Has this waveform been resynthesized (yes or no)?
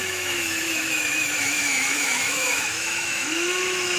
yes